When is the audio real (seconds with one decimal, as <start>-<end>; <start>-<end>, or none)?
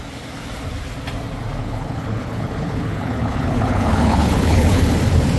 0.0-1.6; 4.8-5.4